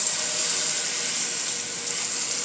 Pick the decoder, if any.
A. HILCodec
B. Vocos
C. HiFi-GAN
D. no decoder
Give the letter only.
D